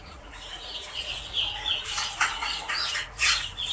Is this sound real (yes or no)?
no